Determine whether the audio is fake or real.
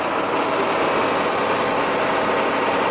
real